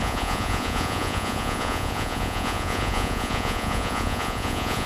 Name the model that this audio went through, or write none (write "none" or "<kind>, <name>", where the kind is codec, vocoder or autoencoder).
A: vocoder, Vocos